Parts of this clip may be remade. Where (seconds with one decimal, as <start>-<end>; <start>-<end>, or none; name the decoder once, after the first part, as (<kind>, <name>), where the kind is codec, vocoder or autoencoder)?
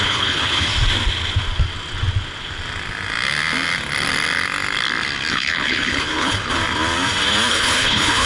0.0-0.7 (codec, HILCodec); 5.3-6.6; 7.5-8.3